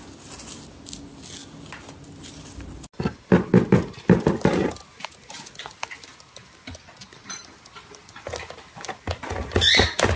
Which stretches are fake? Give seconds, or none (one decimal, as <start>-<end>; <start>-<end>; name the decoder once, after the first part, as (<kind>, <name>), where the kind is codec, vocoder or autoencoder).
none